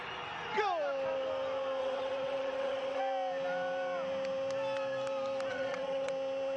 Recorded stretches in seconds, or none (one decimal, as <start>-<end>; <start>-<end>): 0.0-1.8; 3.0-5.5; 6.1-6.6